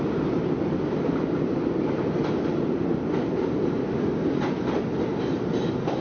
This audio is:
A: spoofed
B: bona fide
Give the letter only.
B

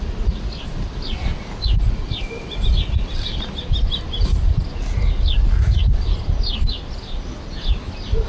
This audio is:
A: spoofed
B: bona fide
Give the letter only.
B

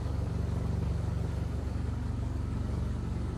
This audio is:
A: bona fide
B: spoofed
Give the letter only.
B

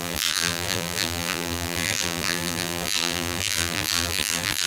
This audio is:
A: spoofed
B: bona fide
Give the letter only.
A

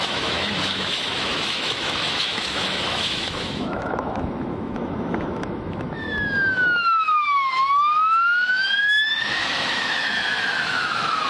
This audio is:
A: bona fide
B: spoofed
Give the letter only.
B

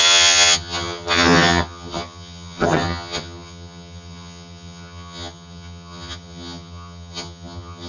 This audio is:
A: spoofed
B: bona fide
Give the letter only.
A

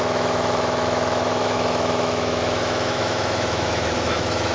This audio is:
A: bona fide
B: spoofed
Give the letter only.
B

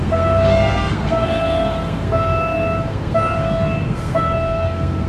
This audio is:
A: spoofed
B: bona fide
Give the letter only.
A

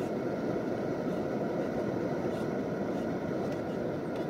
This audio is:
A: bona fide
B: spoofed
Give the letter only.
A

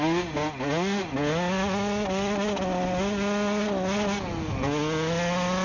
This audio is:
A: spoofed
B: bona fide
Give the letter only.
B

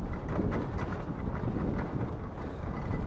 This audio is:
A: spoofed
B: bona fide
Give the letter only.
B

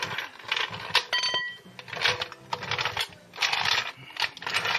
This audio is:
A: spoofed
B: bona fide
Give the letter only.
B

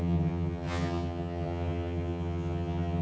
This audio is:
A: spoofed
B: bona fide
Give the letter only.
A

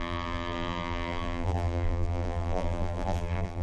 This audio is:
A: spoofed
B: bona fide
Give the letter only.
A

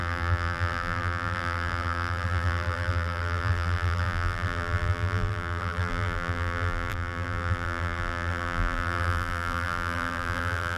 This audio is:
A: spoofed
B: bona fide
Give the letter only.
A